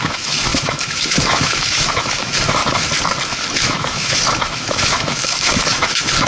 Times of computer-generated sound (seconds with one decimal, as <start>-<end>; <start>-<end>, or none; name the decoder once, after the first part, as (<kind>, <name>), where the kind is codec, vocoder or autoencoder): 0.0-2.6 (autoencoder, DAC-VAE); 3.5-6.3